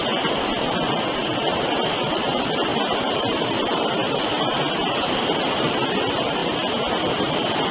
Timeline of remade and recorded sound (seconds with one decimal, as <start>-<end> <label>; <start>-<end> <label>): 0.0-7.7 recorded